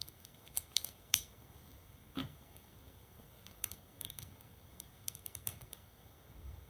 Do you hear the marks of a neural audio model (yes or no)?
yes